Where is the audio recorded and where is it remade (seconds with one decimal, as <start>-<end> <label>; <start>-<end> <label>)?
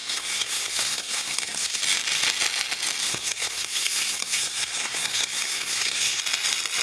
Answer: 0.0-1.8 remade; 1.8-3.0 recorded; 3.0-6.2 remade; 6.2-6.8 recorded